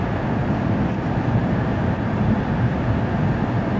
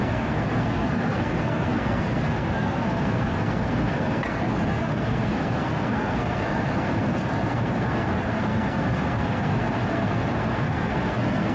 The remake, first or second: second